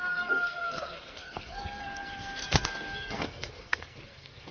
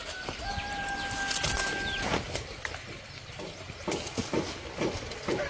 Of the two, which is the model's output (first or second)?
first